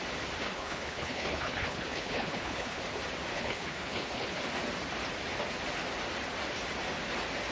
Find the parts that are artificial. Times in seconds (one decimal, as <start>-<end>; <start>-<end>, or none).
0.5-2.8; 3.3-4.4